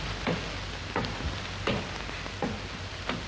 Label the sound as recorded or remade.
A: recorded